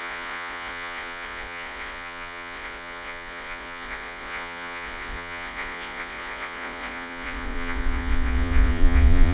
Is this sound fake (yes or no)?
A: yes